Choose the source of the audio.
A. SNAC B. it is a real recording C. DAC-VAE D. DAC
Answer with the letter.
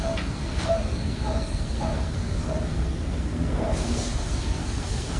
A